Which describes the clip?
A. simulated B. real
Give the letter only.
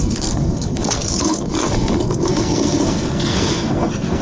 A